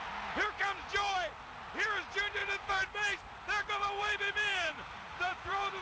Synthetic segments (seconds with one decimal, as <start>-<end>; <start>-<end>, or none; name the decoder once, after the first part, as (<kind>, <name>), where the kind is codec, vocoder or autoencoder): 2.4-3.2 (vocoder, BigVGAN v2); 4.0-5.8